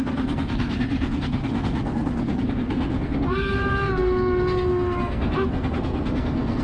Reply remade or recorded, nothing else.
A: remade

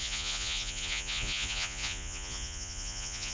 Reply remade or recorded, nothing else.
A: remade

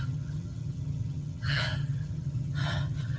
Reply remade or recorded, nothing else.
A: remade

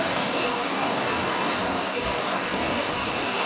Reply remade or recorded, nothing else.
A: remade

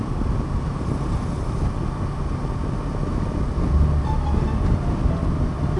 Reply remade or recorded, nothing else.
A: recorded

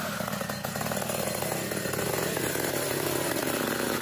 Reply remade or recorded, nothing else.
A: remade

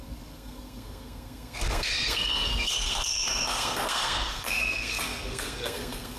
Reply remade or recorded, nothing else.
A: remade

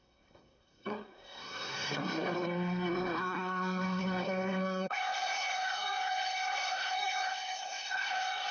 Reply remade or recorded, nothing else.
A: remade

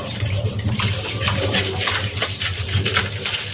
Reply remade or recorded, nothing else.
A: recorded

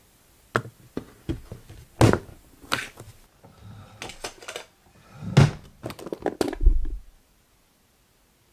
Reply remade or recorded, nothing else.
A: recorded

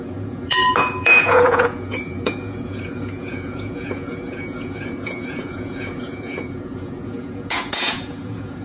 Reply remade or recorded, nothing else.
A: remade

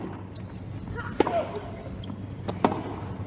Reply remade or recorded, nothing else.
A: recorded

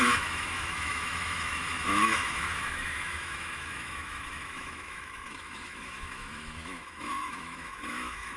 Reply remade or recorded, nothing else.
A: remade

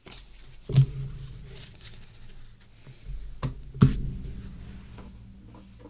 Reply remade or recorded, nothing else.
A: recorded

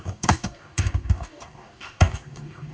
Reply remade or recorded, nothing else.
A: remade